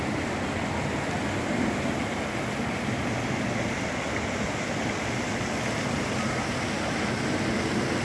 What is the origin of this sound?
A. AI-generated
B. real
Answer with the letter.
B